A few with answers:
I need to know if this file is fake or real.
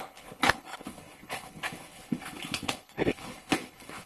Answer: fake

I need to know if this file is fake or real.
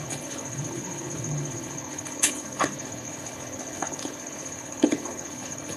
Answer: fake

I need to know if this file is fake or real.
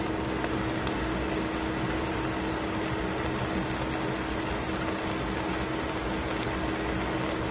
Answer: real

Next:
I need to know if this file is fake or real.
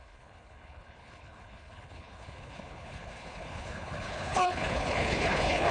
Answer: fake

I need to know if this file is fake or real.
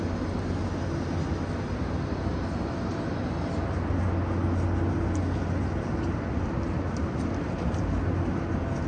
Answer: real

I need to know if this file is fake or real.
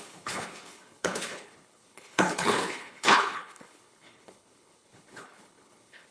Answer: fake